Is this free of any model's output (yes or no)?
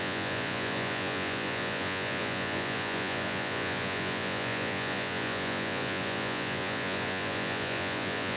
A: no